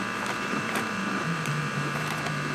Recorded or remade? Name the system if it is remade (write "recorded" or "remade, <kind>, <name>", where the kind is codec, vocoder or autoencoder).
remade, vocoder, BigVGAN v2